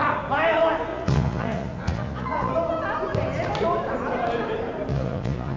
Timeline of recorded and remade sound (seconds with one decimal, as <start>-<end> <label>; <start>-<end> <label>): 0.0-0.9 recorded; 0.9-2.5 remade; 2.5-4.9 recorded; 4.9-5.6 remade